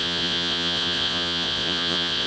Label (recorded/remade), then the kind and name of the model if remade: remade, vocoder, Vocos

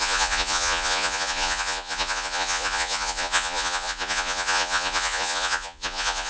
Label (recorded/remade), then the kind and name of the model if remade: remade, vocoder, Vocos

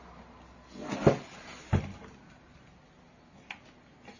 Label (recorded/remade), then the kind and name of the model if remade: recorded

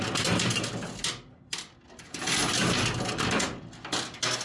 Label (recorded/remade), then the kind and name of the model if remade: recorded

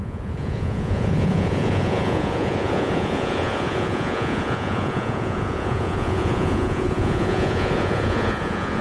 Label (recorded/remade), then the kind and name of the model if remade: remade, vocoder, Vocos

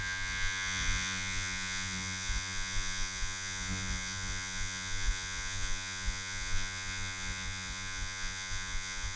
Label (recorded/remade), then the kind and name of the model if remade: remade, vocoder, Vocos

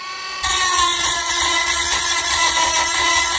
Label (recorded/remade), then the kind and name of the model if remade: remade, vocoder, Vocos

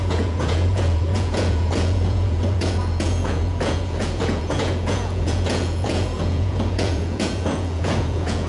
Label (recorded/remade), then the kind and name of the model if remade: remade, vocoder, Vocos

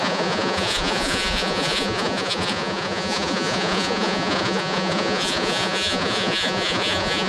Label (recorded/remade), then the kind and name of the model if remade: remade, vocoder, Vocos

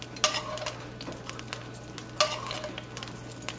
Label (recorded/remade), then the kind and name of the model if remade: recorded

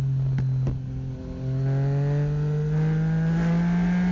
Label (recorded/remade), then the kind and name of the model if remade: recorded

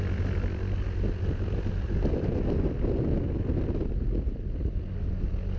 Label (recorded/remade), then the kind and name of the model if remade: recorded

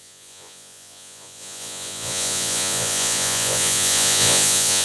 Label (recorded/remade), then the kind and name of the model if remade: remade, vocoder, Vocos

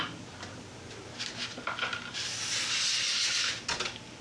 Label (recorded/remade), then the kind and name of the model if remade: recorded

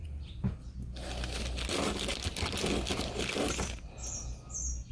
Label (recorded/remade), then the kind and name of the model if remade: recorded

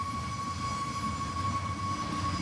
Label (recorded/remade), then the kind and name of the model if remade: recorded